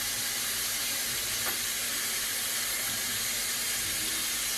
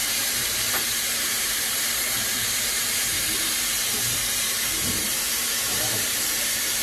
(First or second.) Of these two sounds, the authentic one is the first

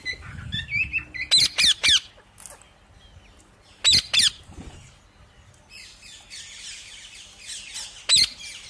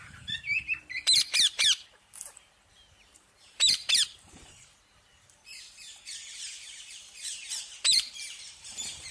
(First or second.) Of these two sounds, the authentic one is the first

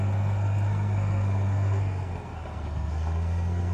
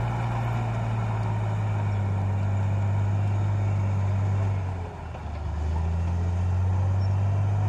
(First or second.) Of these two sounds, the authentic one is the second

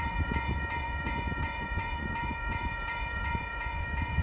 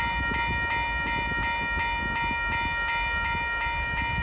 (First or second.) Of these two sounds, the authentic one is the second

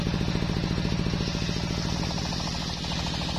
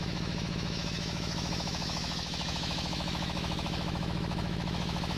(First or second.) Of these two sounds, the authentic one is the first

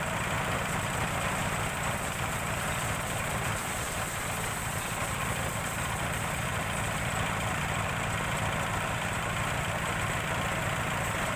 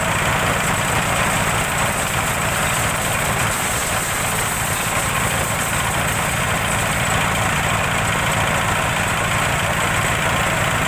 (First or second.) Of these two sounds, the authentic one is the second